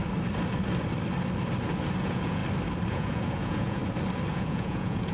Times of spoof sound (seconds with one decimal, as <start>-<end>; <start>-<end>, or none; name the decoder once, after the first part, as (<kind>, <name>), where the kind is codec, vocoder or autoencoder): 2.0-2.4 (vocoder, Vocos); 2.9-3.8; 4.3-5.1